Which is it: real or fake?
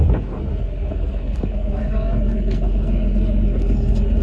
fake